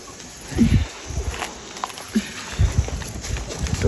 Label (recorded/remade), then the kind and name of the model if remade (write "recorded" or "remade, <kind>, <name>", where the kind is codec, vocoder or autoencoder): recorded